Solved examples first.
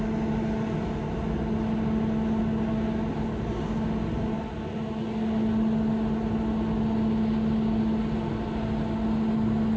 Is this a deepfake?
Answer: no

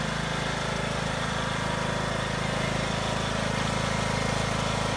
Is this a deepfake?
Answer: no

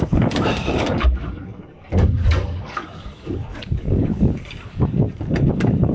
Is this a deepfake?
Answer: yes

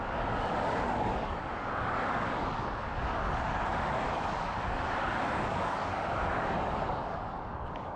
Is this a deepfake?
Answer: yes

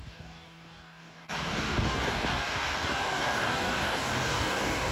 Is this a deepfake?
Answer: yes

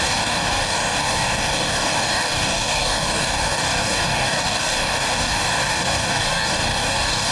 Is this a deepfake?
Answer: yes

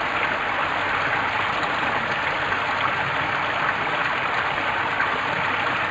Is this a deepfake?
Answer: no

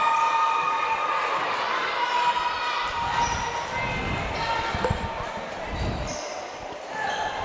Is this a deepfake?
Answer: no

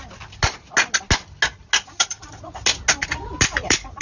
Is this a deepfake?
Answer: no